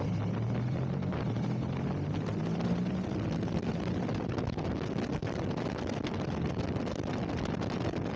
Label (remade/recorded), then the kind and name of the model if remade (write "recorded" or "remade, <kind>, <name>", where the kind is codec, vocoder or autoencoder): recorded